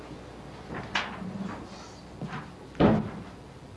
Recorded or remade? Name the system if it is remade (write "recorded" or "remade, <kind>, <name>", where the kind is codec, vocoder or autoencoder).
recorded